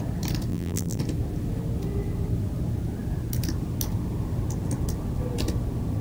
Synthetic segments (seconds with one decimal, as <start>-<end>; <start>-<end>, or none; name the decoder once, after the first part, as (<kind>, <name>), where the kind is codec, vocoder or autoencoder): 0.5-1.0 (vocoder, BigVGAN v2)